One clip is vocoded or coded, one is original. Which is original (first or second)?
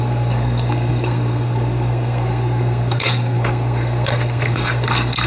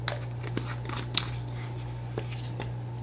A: second